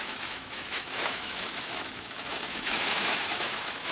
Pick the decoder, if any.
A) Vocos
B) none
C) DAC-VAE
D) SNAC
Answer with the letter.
C